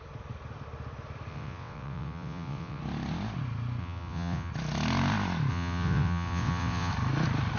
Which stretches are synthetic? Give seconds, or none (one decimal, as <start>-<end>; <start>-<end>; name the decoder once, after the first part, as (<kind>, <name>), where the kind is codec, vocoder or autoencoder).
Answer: 1.3-2.8 (vocoder, WaveNeXt); 3.8-4.5; 5.5-6.9